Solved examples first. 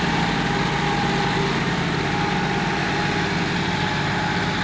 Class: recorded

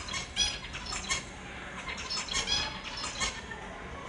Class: recorded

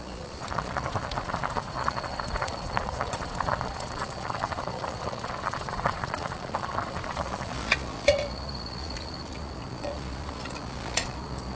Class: remade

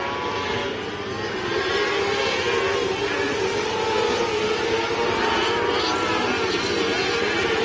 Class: recorded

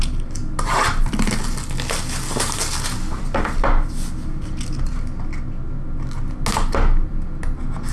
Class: recorded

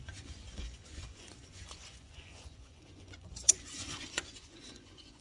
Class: remade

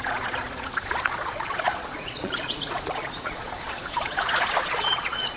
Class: remade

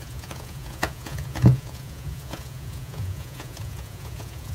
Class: remade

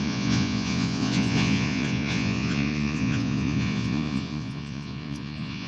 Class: remade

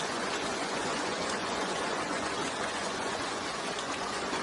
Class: remade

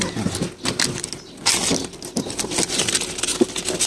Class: recorded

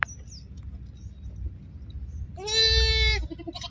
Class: recorded